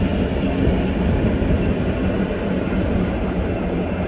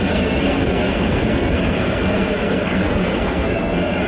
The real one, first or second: first